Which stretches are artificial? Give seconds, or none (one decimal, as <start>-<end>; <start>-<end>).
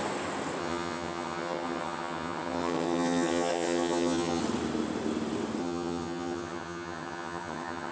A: 0.6-4.4; 5.6-7.9